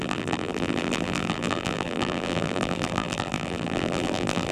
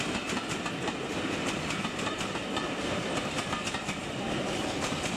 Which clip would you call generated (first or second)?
first